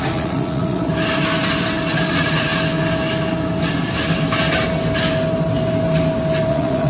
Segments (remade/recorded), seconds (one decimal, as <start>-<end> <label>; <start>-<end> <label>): 0.0-0.9 remade; 0.9-2.1 recorded; 2.1-2.5 remade; 2.5-6.5 recorded; 6.5-6.9 remade